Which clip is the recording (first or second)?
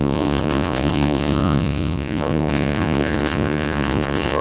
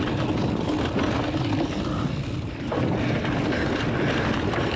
second